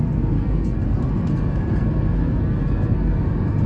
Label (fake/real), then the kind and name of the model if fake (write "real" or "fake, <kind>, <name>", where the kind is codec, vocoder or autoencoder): fake, codec, SNAC